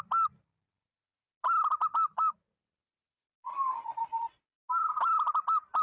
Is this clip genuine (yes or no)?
yes